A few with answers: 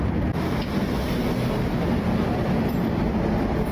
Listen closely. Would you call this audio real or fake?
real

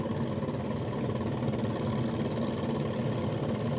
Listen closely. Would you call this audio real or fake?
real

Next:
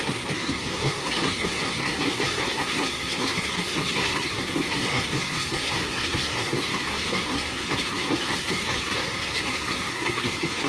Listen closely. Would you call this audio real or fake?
fake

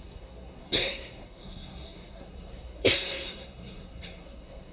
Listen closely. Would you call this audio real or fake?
fake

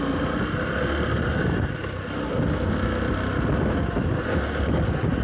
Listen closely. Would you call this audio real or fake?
real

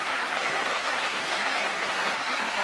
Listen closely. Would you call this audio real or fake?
fake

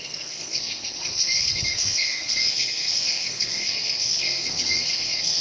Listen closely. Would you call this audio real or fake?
fake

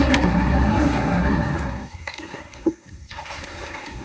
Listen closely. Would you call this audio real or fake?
fake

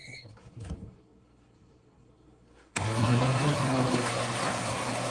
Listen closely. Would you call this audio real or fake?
fake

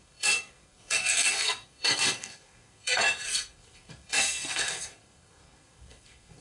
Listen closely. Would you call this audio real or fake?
fake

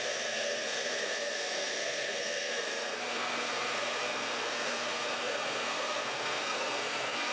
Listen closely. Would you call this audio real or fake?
fake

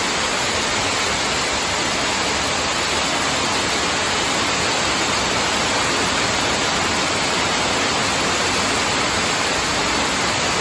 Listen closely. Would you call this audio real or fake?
real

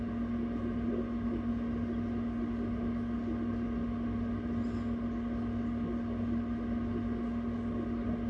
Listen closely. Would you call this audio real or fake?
real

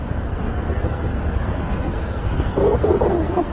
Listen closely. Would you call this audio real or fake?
fake